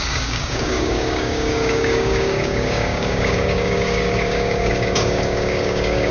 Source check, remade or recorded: remade